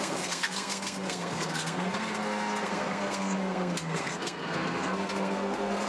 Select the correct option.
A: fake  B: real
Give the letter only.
A